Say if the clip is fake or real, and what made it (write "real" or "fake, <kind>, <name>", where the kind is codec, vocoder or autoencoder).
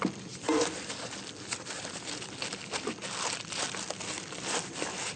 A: real